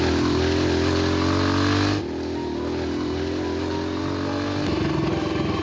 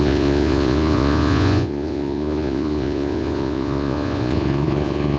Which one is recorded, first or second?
first